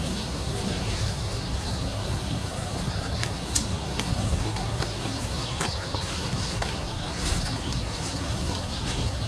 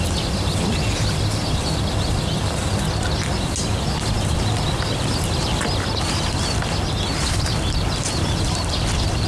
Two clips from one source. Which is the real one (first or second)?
second